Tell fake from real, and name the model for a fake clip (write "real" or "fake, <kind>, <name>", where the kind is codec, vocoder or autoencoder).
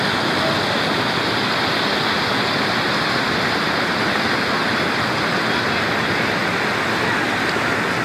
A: real